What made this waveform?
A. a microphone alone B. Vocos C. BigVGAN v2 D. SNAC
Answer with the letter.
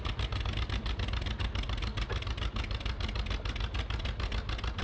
A